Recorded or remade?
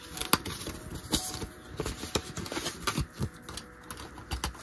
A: recorded